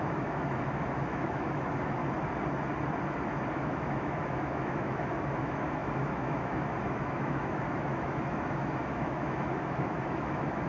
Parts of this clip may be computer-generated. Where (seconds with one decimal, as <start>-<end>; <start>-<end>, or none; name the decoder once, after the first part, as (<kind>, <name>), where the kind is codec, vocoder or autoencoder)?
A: 0.0-2.0 (autoencoder, DAC-VAE); 3.5-10.7